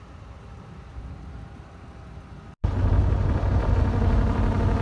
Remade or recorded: recorded